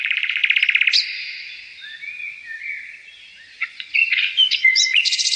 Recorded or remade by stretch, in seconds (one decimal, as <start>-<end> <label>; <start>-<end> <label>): 0.0-0.4 remade; 0.4-3.6 recorded; 3.6-5.4 remade